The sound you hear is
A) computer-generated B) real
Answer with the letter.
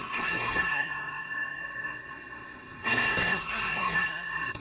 A